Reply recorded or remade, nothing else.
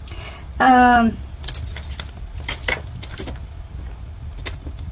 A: recorded